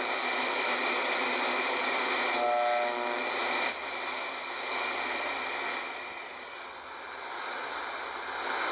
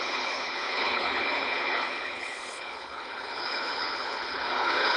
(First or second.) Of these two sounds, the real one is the first